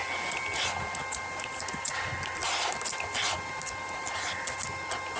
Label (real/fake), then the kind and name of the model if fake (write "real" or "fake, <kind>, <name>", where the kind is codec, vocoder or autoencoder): real